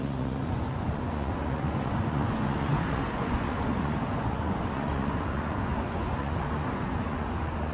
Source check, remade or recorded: remade